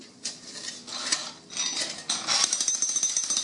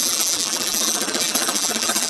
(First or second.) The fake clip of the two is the second